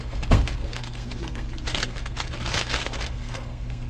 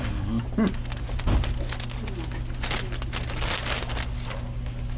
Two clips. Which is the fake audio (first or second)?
first